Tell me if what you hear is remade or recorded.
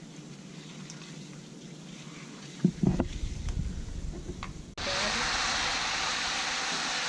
recorded